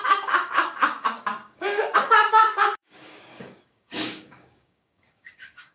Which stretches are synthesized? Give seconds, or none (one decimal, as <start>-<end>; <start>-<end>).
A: 0.0-5.7